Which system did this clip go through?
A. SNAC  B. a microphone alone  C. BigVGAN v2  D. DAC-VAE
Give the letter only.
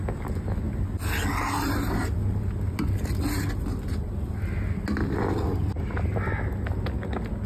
B